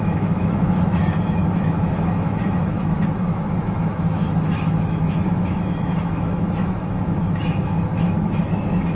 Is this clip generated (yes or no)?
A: yes